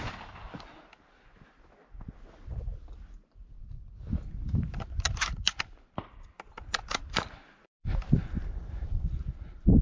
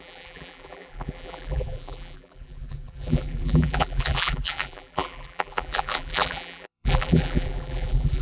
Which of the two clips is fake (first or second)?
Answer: second